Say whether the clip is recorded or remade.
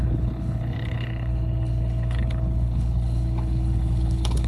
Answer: remade